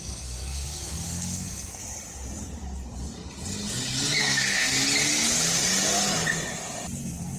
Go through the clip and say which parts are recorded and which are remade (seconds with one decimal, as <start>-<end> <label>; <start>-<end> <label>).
0.0-1.8 remade; 1.8-4.2 recorded; 4.2-4.8 remade; 4.8-7.0 recorded; 7.0-7.4 remade